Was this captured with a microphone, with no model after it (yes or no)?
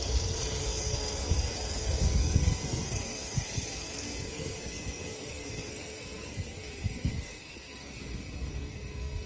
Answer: no